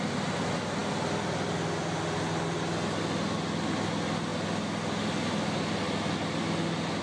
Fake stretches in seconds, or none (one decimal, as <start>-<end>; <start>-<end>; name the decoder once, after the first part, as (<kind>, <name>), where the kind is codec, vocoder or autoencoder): none